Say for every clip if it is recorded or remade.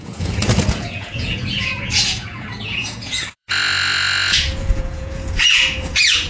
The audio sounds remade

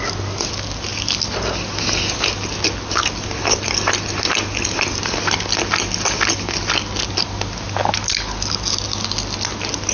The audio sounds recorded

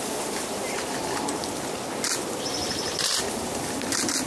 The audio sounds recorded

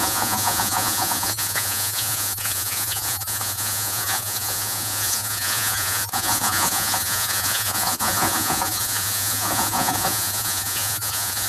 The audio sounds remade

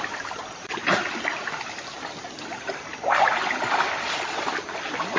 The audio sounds recorded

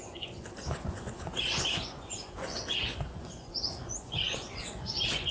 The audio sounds remade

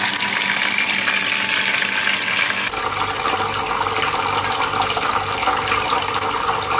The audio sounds recorded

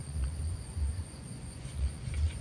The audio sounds remade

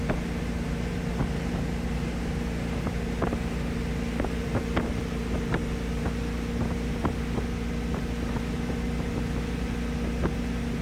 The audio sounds recorded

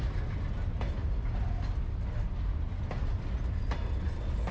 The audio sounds recorded